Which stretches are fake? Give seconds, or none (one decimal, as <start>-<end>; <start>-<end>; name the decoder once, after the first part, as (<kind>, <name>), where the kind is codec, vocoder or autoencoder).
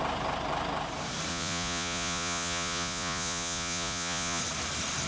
1.3-4.4 (vocoder, Vocos)